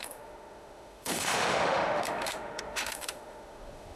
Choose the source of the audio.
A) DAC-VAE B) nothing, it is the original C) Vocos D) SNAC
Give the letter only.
A